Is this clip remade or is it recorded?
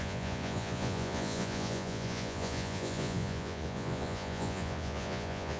remade